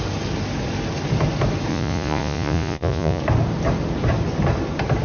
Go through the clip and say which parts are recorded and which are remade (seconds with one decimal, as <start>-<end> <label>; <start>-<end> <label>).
0.0-1.7 recorded; 1.7-3.2 remade; 3.2-5.0 recorded